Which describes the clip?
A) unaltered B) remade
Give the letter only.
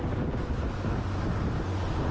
A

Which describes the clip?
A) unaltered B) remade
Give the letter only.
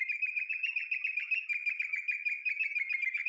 A